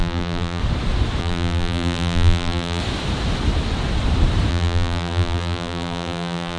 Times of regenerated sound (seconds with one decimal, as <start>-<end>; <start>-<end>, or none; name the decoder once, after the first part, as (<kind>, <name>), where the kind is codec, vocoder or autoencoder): 0.0-0.6 (vocoder, BigVGAN v2); 1.2-2.8; 4.5-6.6